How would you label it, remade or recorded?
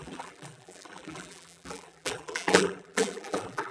remade